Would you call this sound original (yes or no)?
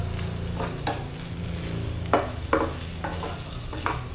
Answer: yes